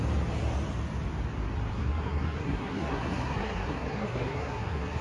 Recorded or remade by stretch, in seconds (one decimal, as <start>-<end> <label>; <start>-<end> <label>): 0.0-1.7 recorded; 1.7-5.0 remade